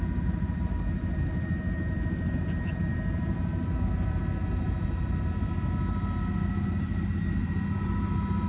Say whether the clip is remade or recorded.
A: recorded